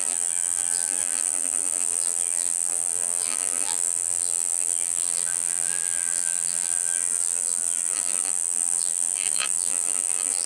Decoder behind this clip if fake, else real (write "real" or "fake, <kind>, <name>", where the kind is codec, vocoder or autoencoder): fake, vocoder, BigVGAN v2